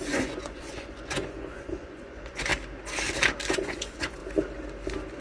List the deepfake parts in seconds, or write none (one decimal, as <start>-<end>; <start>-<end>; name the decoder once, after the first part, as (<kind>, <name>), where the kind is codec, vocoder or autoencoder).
0.0-2.5 (vocoder, Vocos); 3.5-4.2